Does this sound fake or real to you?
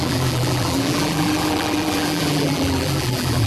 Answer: fake